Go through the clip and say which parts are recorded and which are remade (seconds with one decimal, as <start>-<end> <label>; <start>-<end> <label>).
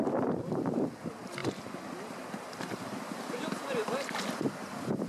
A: 0.0-1.4 recorded; 1.4-4.5 remade; 4.5-5.1 recorded